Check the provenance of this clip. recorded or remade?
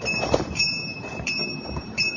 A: remade